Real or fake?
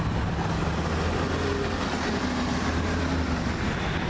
real